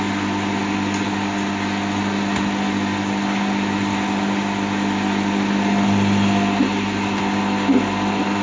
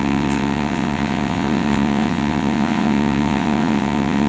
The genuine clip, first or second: first